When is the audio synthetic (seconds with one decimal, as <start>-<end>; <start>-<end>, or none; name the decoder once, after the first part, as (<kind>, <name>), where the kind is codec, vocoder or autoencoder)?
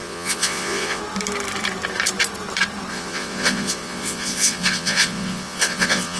0.0-1.0 (vocoder, Vocos); 2.9-6.2